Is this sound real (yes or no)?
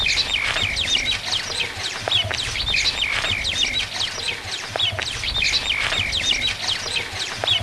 yes